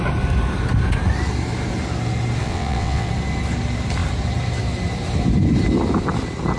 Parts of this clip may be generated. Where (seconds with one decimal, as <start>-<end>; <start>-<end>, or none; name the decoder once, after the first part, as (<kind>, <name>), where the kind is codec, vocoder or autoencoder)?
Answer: 2.4-3.1 (vocoder, WaveNeXt)